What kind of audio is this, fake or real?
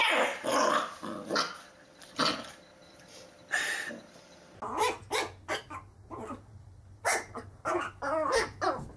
real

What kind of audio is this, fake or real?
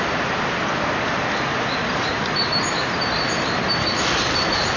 real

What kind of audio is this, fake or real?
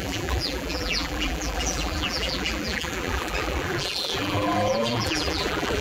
fake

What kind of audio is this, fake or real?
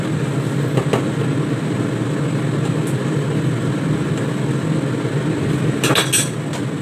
real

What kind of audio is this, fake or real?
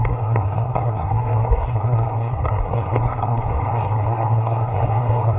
fake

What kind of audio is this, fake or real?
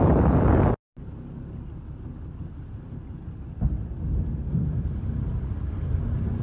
real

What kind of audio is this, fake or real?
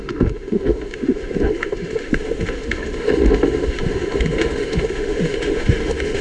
fake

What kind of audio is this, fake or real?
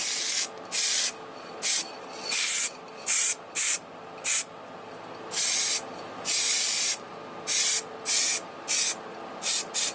real